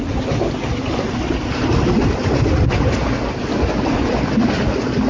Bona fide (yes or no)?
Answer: yes